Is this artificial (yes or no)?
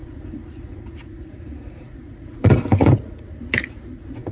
yes